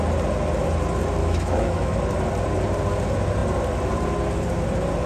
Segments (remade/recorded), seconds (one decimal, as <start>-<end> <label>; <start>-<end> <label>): 0.0-1.2 recorded; 1.2-2.0 remade; 2.0-5.1 recorded